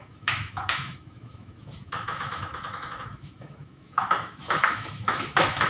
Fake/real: fake